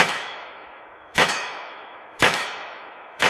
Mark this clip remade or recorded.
remade